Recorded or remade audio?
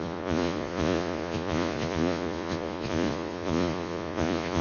remade